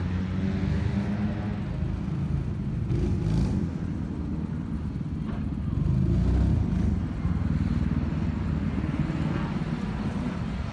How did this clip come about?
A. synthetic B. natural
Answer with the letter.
B